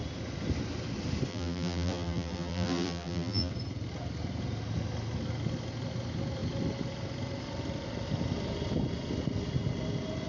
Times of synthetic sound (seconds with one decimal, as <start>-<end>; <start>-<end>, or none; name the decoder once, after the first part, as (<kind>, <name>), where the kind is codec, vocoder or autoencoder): 1.3-3.5 (vocoder, BigVGAN v2)